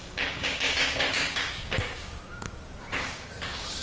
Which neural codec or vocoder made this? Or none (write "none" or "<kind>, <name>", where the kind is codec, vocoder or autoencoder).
codec, DAC